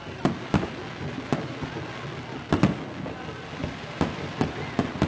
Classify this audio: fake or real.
real